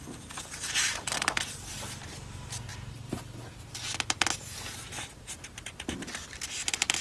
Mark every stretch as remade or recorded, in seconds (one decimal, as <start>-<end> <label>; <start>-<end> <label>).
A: 0.0-7.0 recorded